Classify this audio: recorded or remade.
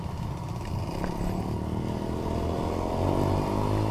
recorded